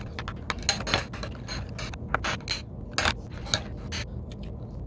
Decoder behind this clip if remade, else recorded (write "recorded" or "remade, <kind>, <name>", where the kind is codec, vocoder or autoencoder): recorded